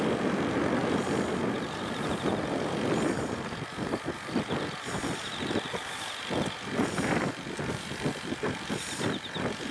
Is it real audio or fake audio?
real